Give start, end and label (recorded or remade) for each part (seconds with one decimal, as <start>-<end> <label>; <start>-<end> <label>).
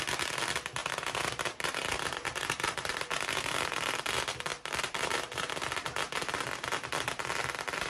0.0-0.8 recorded; 0.8-3.9 remade; 3.9-4.5 recorded; 4.5-5.5 remade; 5.5-7.9 recorded